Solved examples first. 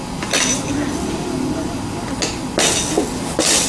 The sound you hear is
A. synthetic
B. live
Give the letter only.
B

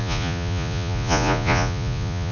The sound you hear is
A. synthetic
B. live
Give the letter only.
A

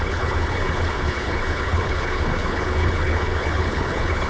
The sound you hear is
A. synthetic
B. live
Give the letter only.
A